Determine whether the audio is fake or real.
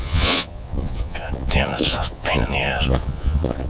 fake